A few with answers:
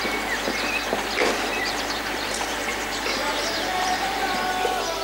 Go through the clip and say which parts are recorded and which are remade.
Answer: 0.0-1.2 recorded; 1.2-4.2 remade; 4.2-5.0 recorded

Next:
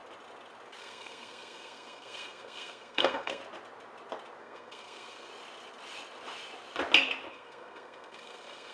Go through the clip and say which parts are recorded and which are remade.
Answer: 0.0-0.8 recorded; 0.8-3.4 remade; 3.4-4.4 recorded; 4.4-5.3 remade; 5.3-7.3 recorded; 7.3-8.7 remade

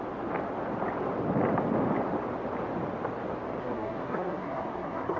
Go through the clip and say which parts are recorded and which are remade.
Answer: 0.0-3.6 recorded; 3.6-5.2 remade